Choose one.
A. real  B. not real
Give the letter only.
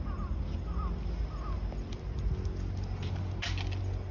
A